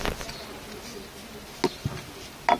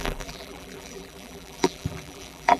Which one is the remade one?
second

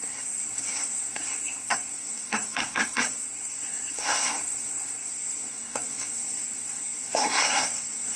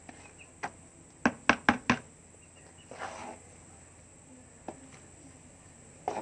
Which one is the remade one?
first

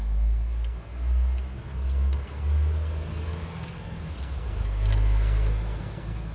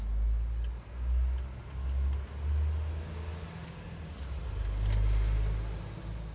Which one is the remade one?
first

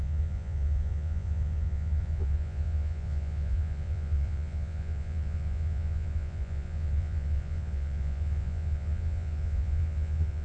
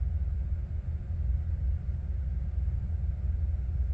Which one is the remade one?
first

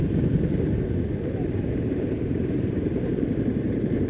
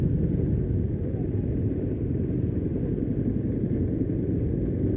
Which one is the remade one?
first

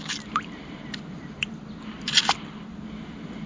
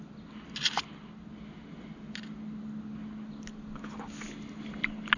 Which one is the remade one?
first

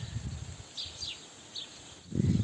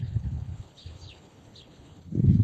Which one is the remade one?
second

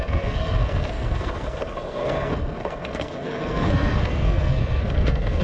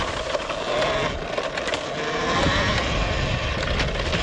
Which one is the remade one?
first